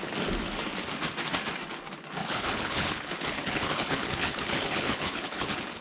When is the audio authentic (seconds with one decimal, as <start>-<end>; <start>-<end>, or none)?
0.0-2.2